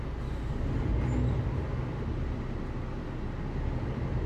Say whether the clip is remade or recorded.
recorded